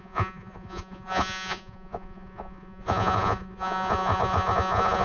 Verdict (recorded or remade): remade